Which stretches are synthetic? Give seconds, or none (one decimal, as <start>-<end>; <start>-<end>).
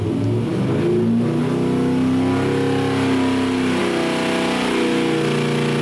none